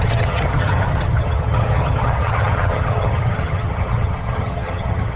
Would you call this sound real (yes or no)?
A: no